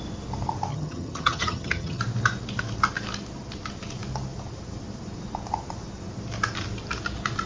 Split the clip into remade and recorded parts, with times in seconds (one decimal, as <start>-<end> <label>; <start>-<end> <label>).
0.0-0.7 recorded; 0.7-2.0 remade; 2.0-7.5 recorded